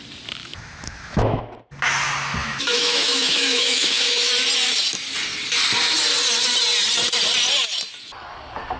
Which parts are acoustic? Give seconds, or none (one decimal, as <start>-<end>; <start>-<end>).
0.0-0.4; 1.4-2.4; 4.3-8.8